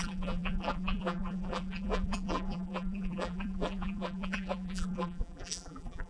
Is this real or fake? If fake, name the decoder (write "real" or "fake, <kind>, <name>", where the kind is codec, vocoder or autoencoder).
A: fake, vocoder, BigVGAN v2